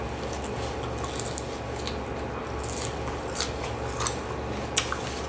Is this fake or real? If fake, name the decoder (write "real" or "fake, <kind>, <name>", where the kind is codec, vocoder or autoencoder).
real